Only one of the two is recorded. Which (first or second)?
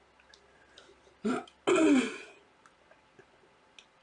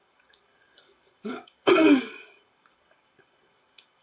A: first